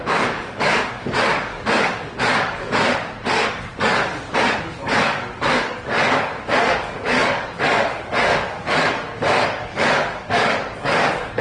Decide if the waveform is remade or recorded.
remade